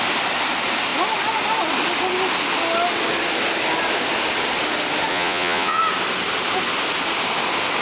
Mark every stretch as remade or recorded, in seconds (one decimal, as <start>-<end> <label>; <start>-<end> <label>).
0.0-5.1 recorded; 5.1-5.8 remade; 5.8-7.8 recorded